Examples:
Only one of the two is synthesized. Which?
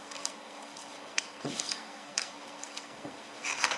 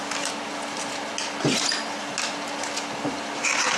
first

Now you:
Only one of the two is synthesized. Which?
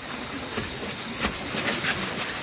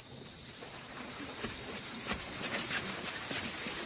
second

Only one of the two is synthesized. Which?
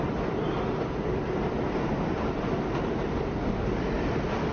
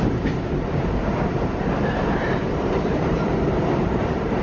second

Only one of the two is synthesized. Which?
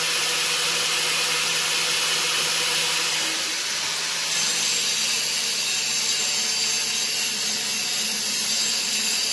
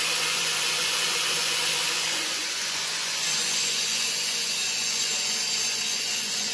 second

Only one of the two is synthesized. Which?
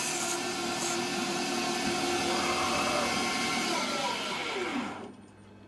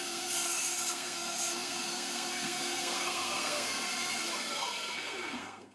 second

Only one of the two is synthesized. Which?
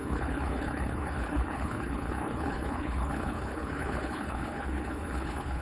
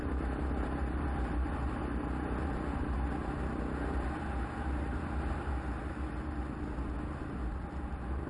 first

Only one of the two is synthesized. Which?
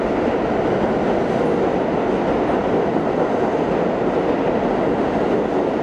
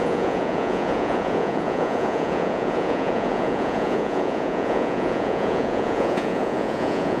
second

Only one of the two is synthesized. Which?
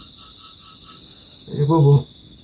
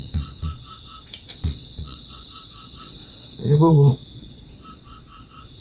second